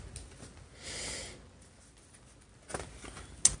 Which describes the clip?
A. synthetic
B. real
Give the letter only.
B